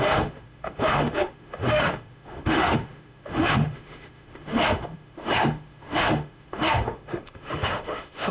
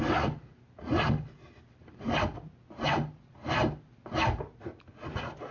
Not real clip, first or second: first